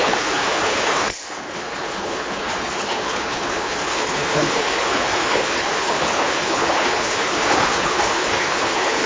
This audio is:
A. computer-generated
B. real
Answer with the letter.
A